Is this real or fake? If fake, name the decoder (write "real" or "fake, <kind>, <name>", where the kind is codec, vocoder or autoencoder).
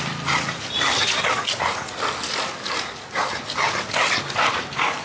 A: real